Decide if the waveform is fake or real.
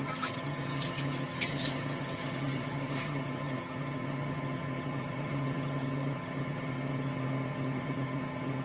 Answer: fake